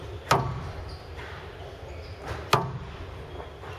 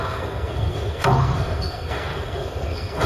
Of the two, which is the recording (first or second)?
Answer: first